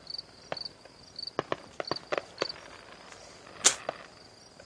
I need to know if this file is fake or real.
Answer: real